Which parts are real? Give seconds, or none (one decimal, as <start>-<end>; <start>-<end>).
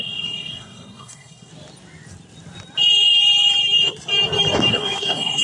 1.5-4.7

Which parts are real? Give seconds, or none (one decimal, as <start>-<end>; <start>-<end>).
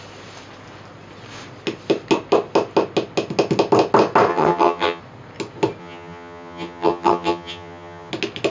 0.0-4.3; 5.0-5.8; 8.1-8.5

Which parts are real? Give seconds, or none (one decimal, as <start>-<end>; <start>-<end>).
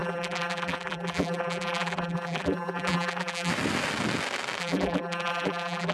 3.5-4.6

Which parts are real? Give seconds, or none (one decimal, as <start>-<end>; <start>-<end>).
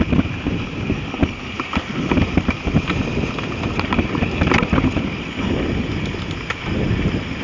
0.0-7.4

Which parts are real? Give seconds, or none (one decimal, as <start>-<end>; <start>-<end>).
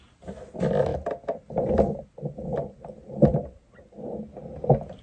0.0-5.0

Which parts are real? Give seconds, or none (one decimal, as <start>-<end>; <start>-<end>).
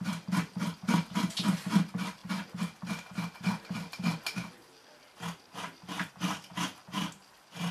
0.0-7.7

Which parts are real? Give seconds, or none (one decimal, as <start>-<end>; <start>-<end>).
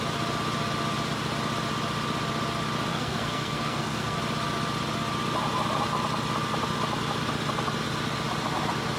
0.0-2.9; 4.2-9.0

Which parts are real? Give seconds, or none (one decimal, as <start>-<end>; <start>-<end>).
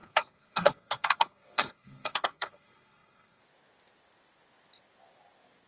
3.4-5.7